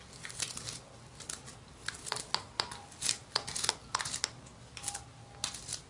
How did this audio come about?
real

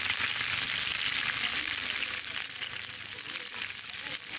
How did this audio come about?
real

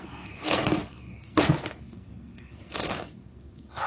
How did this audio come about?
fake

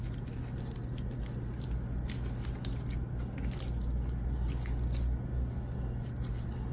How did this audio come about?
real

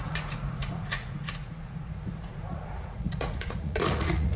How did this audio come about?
fake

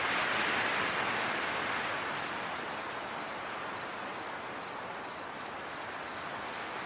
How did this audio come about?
real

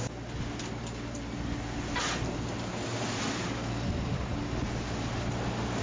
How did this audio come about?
real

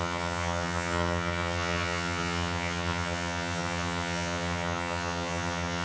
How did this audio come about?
fake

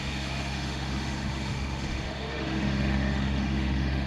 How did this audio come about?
fake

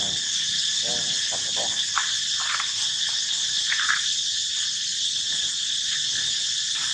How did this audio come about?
real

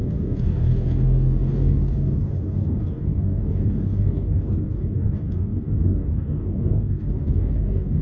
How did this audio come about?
fake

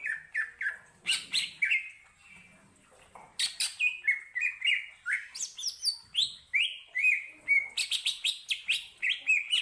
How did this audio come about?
real